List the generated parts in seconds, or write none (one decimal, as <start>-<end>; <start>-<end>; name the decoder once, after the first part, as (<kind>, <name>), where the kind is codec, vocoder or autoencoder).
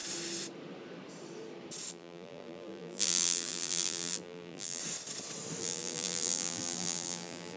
1.9-4.8 (vocoder, BigVGAN v2); 5.6-7.6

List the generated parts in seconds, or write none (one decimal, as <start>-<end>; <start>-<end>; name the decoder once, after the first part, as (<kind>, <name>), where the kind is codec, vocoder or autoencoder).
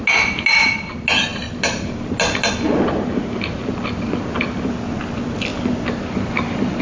none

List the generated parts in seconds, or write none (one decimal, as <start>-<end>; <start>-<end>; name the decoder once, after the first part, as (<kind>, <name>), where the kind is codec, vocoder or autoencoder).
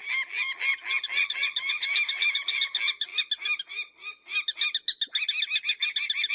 0.0-3.1 (vocoder, BigVGAN v2)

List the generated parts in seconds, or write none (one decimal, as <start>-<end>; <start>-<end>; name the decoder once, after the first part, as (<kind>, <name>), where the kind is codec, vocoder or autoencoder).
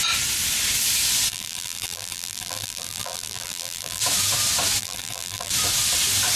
1.3-4.0 (vocoder, BigVGAN v2); 4.8-5.5